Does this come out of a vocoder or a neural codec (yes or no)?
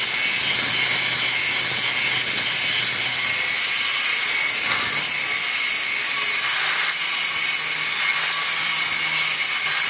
no